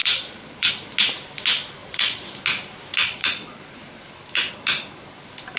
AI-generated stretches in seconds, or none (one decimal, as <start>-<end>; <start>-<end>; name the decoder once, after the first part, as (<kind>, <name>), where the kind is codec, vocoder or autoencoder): 0.0-0.7 (vocoder, Vocos); 1.8-2.3; 3.0-3.6